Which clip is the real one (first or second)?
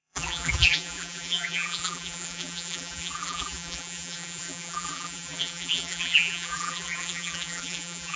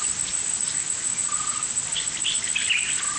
second